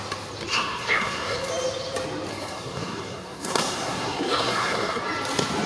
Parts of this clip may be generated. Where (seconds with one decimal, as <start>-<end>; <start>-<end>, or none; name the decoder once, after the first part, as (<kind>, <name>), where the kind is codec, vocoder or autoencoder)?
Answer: 0.5-1.5 (codec, SNAC); 2.3-5.0